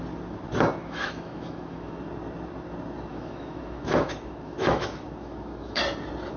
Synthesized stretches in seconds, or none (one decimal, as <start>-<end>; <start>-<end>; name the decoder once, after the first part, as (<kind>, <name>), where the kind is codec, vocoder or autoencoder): 0.8-2.0 (autoencoder, DAC-VAE); 3.1-5.8